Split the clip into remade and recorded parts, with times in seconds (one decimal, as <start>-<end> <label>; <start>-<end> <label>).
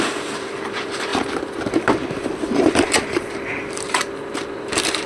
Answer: 0.0-1.1 remade; 1.1-1.7 recorded; 1.7-5.1 remade